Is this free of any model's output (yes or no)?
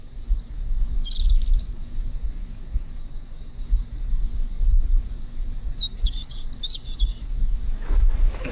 no